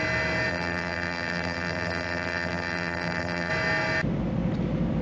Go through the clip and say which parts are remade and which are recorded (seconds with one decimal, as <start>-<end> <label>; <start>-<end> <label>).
0.0-0.5 recorded; 0.5-3.5 remade; 3.5-5.0 recorded